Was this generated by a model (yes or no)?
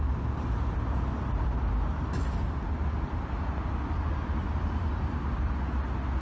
no